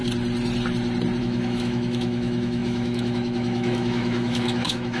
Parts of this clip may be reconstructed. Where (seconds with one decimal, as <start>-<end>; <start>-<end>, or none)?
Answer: 1.2-5.0